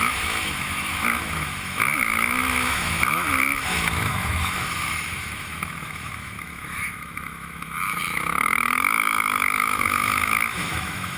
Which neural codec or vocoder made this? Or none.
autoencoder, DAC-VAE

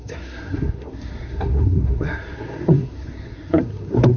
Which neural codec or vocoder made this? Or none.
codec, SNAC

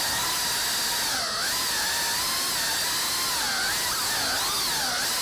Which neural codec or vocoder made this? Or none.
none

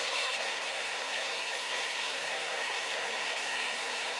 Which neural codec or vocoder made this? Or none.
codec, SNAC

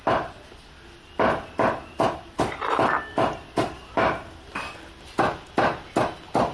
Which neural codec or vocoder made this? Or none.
none